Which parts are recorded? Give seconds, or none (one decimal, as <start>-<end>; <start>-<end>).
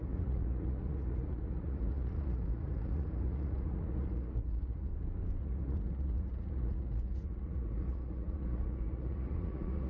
4.9-5.4